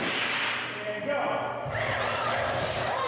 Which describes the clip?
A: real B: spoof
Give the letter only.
B